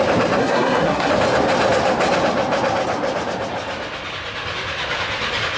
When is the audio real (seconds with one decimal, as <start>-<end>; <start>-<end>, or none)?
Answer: 0.0-0.4; 1.1-5.6